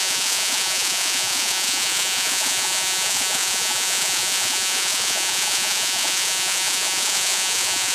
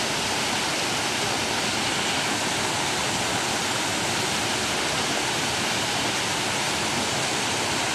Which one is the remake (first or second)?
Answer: first